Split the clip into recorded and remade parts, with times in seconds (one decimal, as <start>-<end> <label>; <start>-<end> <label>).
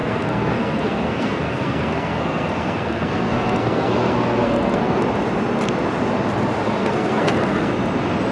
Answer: 0.0-5.0 remade; 5.0-6.8 recorded; 6.8-7.7 remade; 7.7-8.3 recorded